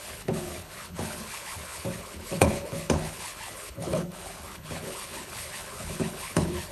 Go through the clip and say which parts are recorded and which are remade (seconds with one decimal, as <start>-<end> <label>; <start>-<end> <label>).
0.0-6.7 remade